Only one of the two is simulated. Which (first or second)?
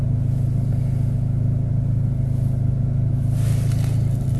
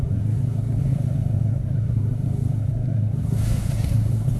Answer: second